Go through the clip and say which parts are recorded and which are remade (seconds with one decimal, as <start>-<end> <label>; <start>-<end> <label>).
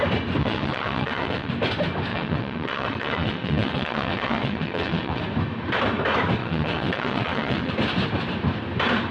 0.0-0.4 recorded; 0.4-1.5 remade; 1.5-2.1 recorded; 2.1-5.2 remade; 5.2-6.4 recorded; 6.4-7.7 remade; 7.7-9.1 recorded